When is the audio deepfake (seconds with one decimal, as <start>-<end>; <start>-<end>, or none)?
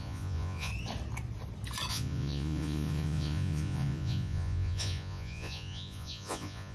0.0-0.7; 1.9-6.7